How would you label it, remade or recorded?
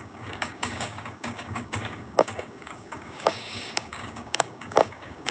remade